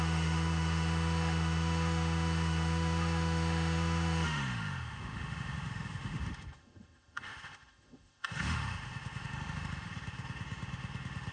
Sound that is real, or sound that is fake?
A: fake